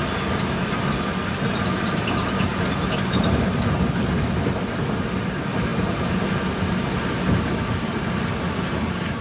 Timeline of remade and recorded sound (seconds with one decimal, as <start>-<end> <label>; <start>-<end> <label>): 0.0-9.2 recorded